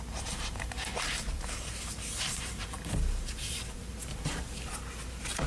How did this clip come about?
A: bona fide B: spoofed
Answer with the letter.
B